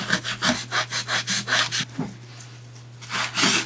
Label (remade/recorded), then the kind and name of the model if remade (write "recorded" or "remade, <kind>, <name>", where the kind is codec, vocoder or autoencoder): recorded